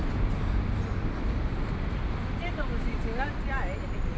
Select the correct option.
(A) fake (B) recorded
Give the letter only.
B